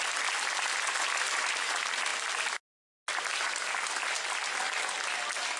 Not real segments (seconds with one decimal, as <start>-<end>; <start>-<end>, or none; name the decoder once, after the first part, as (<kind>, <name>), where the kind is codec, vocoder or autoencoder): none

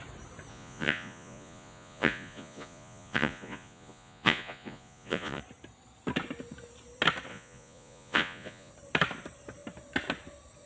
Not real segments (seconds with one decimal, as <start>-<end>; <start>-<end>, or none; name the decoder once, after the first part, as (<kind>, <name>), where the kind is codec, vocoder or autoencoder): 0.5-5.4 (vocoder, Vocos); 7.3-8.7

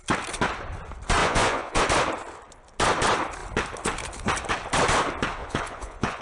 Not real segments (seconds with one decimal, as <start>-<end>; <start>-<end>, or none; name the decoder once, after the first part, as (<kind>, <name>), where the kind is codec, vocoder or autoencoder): 1.2-1.8 (vocoder, Vocos); 5.4-6.2

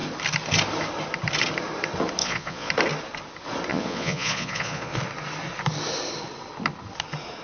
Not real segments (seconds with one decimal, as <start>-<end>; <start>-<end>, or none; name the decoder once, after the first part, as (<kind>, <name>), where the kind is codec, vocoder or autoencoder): 2.2-2.7 (vocoder, Vocos); 3.7-5.0

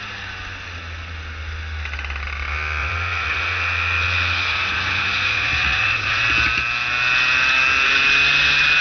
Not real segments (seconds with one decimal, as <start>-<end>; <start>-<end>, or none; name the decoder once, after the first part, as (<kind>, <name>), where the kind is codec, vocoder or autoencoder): 2.8-6.2 (vocoder, Vocos)